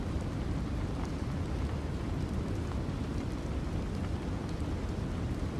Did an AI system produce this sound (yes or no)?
no